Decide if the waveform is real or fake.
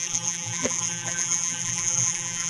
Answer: fake